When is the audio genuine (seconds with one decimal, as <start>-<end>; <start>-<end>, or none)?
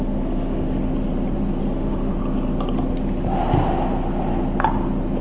0.8-1.6; 2.1-5.2